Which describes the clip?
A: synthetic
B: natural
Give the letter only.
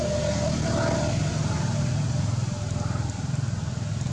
B